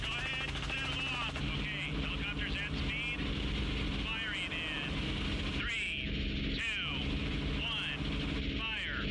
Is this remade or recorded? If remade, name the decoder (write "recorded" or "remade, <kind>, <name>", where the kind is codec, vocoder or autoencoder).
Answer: recorded